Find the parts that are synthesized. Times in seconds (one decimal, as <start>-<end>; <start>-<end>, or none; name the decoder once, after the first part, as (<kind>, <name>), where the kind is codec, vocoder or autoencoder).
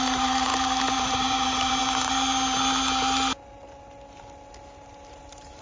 0.0-0.5 (vocoder, BigVGAN v2); 1.0-1.8; 5.1-5.6